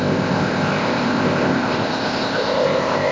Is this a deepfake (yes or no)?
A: yes